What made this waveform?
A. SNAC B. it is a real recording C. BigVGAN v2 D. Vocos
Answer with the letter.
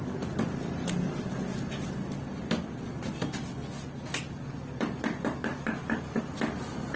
B